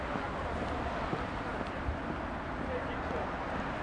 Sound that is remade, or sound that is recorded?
recorded